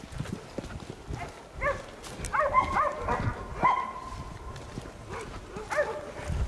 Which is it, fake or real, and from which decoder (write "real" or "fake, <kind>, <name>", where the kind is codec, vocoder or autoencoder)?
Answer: real